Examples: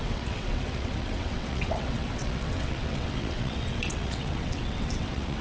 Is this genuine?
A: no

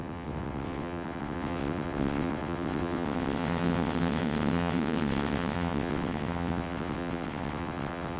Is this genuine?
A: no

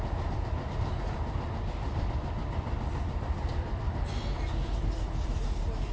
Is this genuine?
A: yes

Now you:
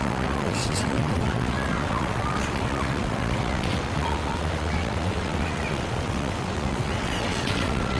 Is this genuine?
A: no